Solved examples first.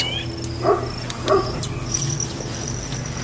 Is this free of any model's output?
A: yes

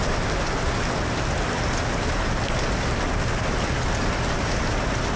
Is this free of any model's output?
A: yes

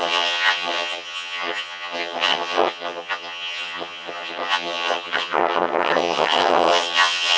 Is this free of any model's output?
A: no